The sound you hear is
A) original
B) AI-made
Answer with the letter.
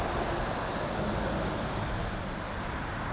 A